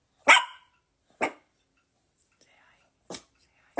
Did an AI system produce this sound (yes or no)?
no